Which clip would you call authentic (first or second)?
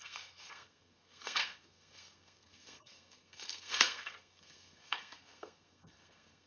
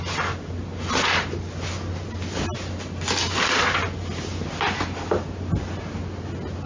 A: second